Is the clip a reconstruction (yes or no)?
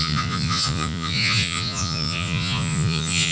yes